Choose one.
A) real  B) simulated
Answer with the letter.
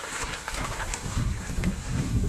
B